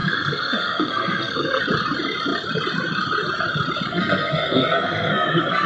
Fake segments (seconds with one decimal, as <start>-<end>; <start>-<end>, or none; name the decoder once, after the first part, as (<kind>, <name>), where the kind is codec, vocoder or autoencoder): 0.0-1.6 (codec, SNAC); 3.9-5.7